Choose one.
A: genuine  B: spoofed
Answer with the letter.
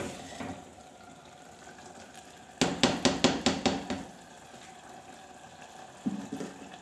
A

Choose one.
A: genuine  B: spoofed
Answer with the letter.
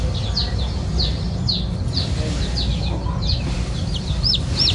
A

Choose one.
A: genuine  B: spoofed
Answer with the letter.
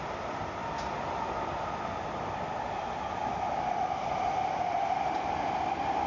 A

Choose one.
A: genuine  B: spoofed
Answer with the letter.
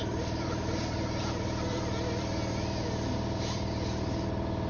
B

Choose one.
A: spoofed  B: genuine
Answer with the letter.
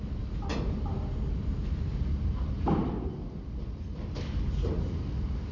B